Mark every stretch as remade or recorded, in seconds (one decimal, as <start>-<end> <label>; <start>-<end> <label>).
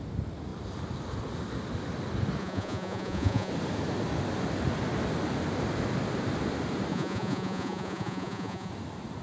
0.0-2.4 recorded; 2.4-3.5 remade; 3.5-6.9 recorded; 6.9-8.7 remade; 8.7-9.2 recorded